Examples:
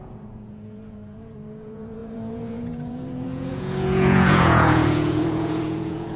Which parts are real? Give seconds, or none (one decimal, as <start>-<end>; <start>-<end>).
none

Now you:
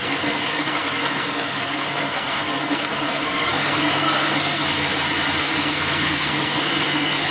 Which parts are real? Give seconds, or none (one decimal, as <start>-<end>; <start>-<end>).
4.9-5.4

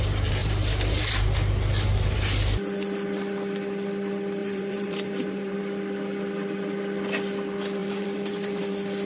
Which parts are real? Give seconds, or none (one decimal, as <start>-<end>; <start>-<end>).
0.0-0.4; 1.1-4.4; 5.6-7.8; 8.6-9.1

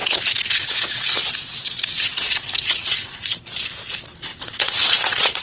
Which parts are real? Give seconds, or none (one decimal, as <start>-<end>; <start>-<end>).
3.2-4.3

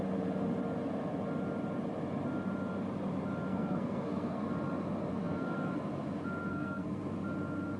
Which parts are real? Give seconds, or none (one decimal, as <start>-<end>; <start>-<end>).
0.0-3.5; 4.5-5.1; 5.7-6.5; 7.0-7.8